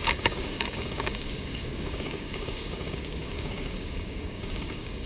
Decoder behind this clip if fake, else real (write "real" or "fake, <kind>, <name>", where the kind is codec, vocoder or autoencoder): fake, codec, DAC